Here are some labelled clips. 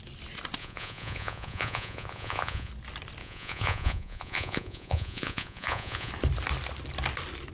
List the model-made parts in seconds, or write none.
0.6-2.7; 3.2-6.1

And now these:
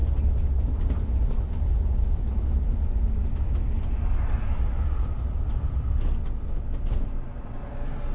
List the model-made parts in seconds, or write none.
none